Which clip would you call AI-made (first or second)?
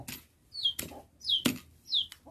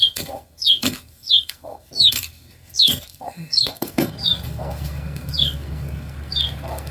second